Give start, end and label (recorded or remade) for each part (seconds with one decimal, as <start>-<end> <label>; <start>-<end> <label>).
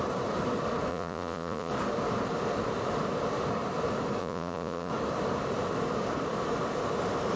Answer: 0.0-0.9 recorded; 0.9-1.7 remade; 1.7-4.2 recorded; 4.2-4.9 remade; 4.9-7.4 recorded